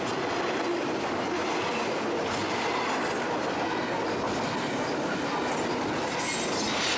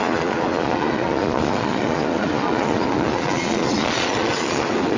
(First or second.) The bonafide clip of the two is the first